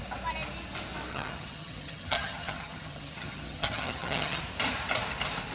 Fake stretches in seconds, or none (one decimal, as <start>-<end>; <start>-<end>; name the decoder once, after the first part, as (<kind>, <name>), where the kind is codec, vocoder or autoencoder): 1.1-4.4 (vocoder, HiFi-GAN)

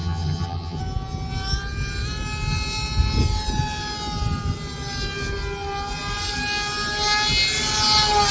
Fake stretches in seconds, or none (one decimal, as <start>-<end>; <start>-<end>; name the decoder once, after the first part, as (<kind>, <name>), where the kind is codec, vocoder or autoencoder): 0.0-0.8 (vocoder, HiFi-GAN)

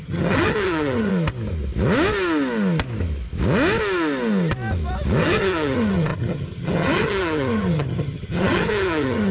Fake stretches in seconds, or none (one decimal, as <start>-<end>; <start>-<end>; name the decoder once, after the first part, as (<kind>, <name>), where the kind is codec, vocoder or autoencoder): 0.0-1.1 (vocoder, HiFi-GAN); 5.2-9.3

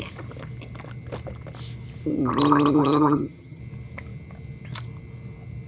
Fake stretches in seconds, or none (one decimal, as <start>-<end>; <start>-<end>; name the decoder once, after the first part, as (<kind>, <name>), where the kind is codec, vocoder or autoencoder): 2.8-3.6 (vocoder, HiFi-GAN)

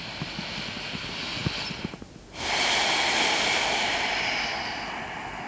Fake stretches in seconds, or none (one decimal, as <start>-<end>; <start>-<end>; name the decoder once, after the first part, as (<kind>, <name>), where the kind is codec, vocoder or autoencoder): none

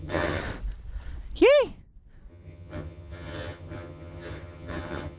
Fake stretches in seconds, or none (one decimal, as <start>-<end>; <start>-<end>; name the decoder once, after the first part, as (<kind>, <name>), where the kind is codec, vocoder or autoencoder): 0.0-0.4 (vocoder, HiFi-GAN); 2.3-5.2

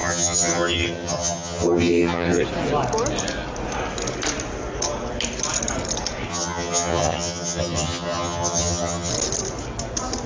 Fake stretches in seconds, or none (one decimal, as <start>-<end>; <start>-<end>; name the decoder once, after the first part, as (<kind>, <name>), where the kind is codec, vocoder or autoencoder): 0.0-2.4 (vocoder, HiFi-GAN); 6.3-9.1